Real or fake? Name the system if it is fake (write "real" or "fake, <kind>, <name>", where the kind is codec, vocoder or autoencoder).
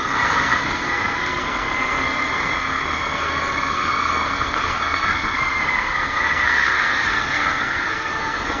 fake, codec, SNAC